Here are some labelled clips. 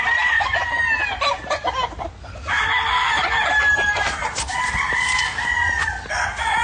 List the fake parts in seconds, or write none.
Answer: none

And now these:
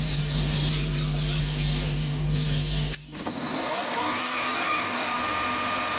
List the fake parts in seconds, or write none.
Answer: 0.0-0.7 (codec, DAC); 1.4-5.2

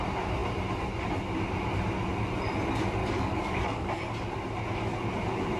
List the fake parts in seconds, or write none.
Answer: 3.0-4.1 (codec, DAC)

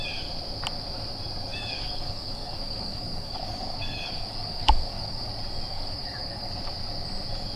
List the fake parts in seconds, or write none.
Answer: 1.5-5.3 (codec, DAC); 5.7-6.5

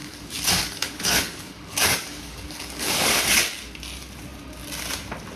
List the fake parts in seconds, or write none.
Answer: 0.0-3.2 (codec, DAC)

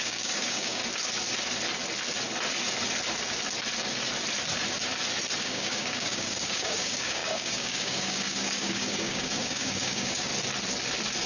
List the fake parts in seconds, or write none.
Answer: 0.0-0.8 (codec, DAC); 5.4-10.3